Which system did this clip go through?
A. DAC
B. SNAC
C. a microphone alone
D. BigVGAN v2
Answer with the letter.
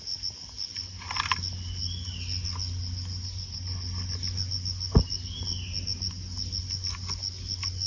C